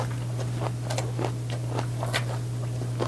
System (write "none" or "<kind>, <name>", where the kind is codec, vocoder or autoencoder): none